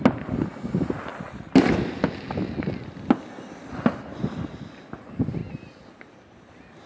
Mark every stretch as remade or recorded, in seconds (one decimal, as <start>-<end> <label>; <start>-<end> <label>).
0.0-6.9 recorded